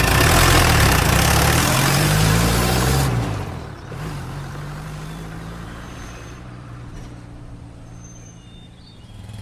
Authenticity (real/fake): fake